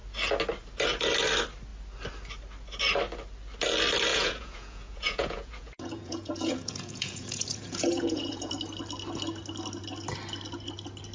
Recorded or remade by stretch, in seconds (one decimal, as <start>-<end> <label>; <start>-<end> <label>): 0.0-4.1 recorded; 4.1-8.5 remade; 8.5-11.1 recorded